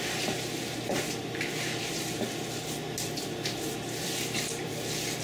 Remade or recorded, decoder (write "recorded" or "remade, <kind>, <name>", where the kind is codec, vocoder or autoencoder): remade, vocoder, BigVGAN v2